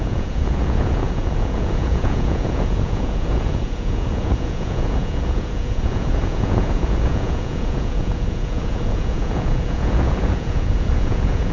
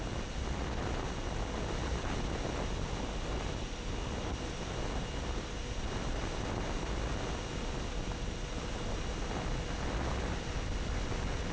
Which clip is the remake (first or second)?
first